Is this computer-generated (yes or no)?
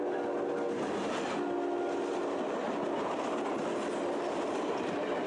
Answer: no